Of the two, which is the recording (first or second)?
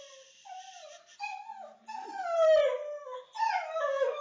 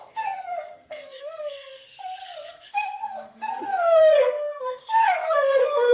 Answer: first